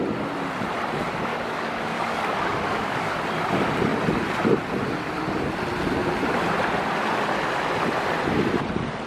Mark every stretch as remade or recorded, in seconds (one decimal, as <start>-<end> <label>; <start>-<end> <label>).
0.0-1.3 recorded; 1.3-3.1 remade; 3.1-9.1 recorded